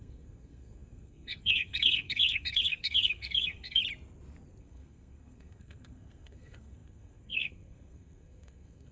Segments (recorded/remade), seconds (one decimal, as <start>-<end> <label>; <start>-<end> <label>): 0.0-3.8 remade; 3.8-4.6 recorded; 4.6-8.9 remade